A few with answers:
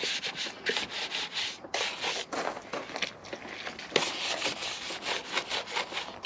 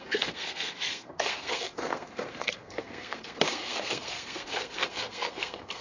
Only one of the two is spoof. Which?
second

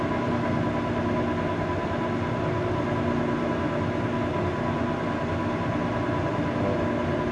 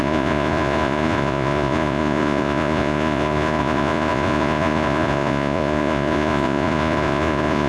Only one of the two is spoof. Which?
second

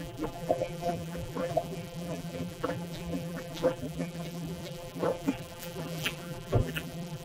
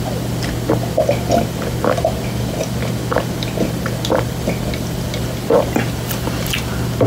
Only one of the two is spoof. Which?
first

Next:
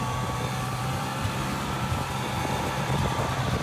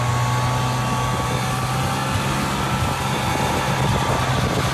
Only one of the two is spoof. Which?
first